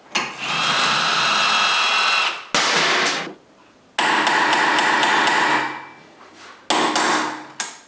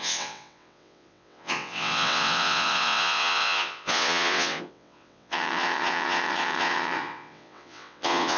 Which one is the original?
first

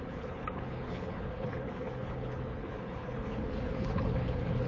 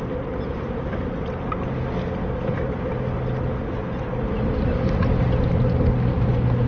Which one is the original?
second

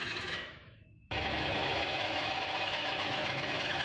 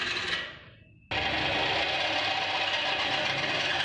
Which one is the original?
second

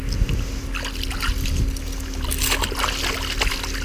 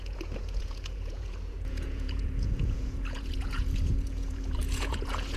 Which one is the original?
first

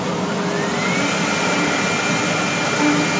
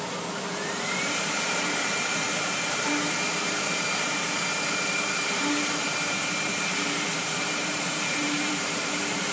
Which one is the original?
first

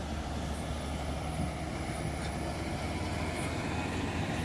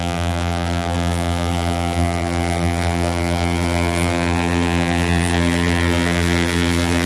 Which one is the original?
first